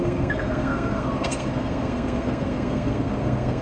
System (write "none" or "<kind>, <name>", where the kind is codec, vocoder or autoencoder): codec, SNAC